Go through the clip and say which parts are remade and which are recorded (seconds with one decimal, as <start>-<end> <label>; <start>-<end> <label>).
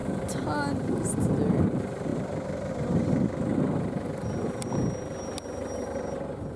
0.0-6.6 recorded